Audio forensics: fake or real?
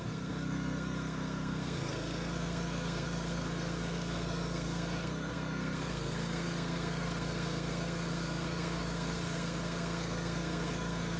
fake